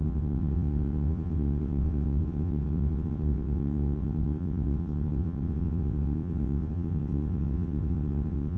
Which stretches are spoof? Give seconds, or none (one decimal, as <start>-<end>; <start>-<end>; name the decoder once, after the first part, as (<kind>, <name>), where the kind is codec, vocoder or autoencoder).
0.0-8.6 (vocoder, WaveNeXt)